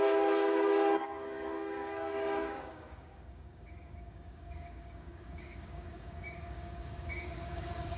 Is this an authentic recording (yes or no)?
no